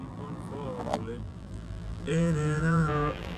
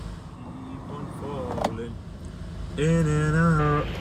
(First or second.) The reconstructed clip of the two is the first